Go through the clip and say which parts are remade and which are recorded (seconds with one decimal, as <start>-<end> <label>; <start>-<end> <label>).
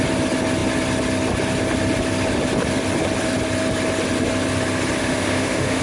0.0-5.0 recorded; 5.0-5.8 remade